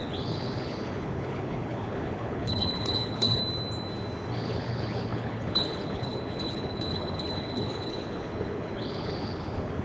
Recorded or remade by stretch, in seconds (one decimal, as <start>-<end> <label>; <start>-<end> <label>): 0.0-3.4 remade; 3.4-4.3 recorded; 4.3-9.8 remade